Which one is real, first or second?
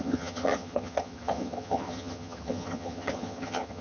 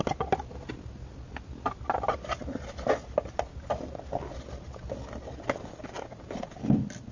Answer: second